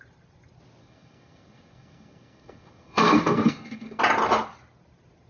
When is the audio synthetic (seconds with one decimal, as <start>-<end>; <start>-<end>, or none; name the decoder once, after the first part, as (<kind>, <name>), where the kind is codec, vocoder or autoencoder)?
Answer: 0.8-4.0 (codec, SNAC)